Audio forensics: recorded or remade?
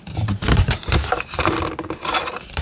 remade